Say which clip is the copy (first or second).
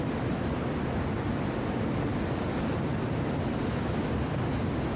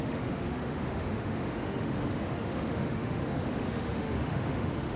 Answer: second